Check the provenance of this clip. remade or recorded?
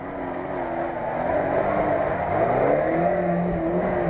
recorded